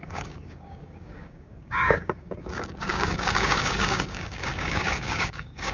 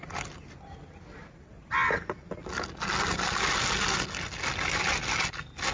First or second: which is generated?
first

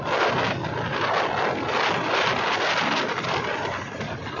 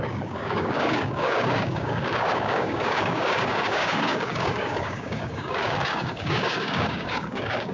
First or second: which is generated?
second